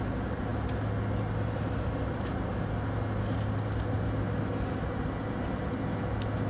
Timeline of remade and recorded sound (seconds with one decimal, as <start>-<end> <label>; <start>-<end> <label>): 0.0-6.5 recorded